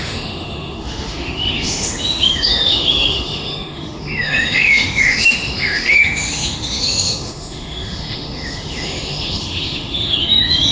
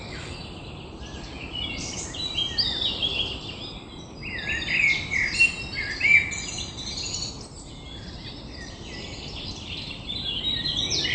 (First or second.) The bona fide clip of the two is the second